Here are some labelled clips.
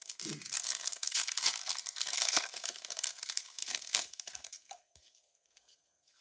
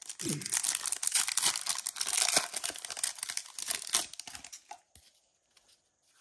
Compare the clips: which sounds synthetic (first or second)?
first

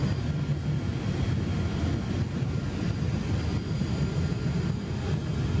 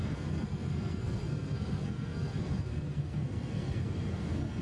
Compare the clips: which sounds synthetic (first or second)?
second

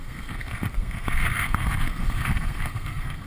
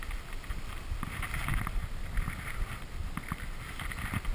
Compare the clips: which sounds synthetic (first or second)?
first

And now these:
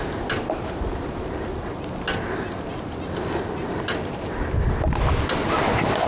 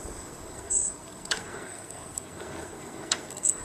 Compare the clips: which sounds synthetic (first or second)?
second